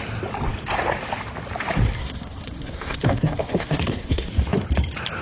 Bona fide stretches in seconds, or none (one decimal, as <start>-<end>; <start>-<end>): 0.0-2.0; 4.3-5.2